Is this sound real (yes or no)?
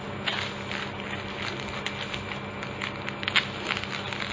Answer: yes